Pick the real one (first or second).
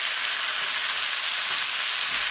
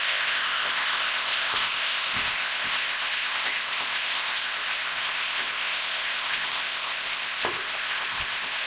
first